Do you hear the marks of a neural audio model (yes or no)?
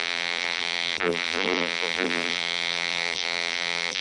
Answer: yes